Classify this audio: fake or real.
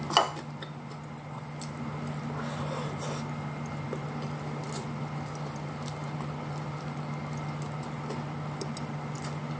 real